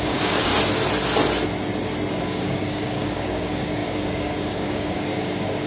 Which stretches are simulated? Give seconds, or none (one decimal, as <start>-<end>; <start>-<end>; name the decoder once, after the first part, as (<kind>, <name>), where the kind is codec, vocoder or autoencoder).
0.0-0.5 (codec, DAC); 2.1-5.7